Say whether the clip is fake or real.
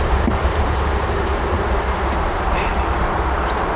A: fake